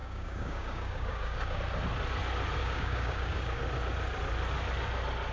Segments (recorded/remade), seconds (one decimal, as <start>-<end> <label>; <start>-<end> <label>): 0.0-1.6 remade; 1.6-2.6 recorded; 2.6-3.6 remade; 3.6-5.3 recorded